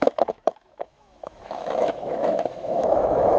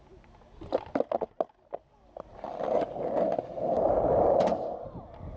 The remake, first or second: first